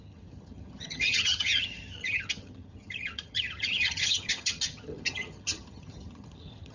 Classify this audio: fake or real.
fake